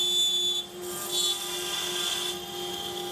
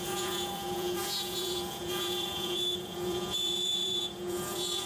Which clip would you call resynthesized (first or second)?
second